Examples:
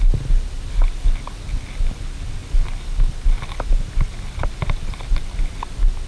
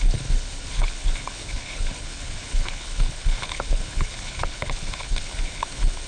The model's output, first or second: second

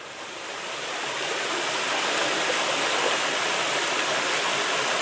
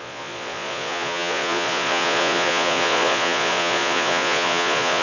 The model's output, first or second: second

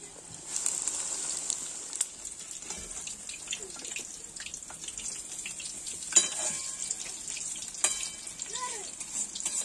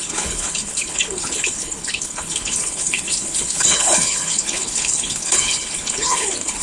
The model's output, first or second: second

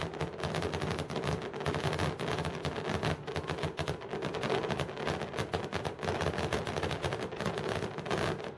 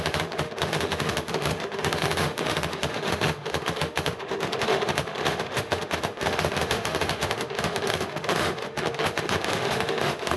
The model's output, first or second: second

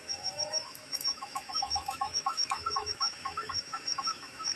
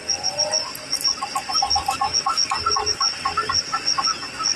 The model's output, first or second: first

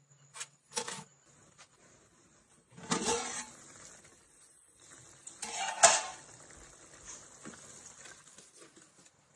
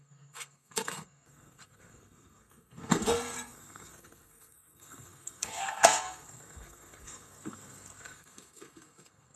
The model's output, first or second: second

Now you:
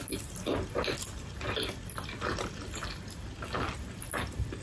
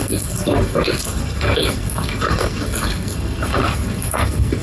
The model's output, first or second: second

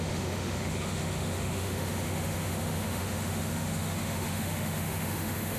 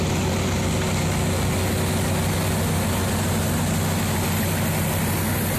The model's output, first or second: first